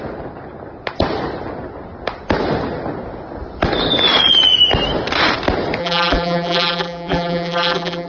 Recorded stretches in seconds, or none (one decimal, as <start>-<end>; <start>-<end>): 0.0-5.8